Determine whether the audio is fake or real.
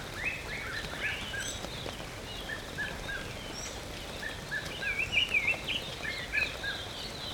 real